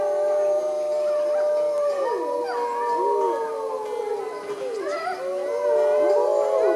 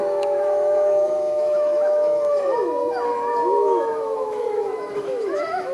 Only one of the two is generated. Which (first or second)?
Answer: second